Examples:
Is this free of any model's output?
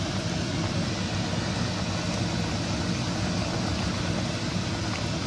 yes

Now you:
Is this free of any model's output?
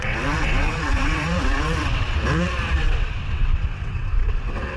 no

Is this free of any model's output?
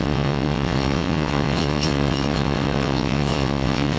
no